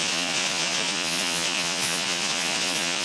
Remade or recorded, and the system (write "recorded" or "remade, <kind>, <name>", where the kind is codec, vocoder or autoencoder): remade, vocoder, Vocos